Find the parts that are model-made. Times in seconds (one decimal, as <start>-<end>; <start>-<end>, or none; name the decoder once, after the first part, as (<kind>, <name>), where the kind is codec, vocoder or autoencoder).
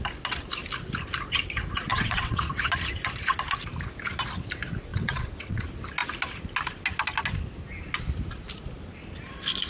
1.9-2.5 (vocoder, WaveNeXt); 4.9-5.6